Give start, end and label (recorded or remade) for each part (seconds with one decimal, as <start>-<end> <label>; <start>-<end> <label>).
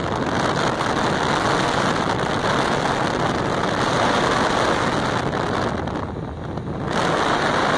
0.0-7.8 recorded